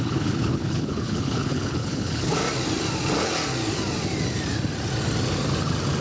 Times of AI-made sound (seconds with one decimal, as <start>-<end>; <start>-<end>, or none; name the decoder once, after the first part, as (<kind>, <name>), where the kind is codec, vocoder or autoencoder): 0.0-2.3 (codec, HILCodec)